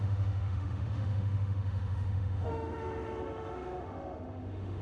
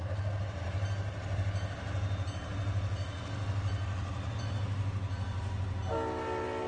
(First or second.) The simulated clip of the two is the first